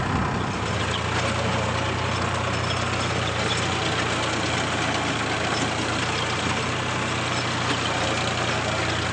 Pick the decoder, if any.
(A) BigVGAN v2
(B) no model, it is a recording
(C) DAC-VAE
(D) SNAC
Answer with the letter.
B